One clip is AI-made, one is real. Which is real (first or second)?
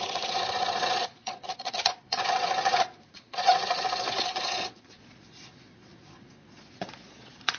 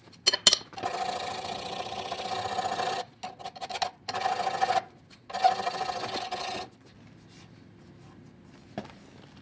second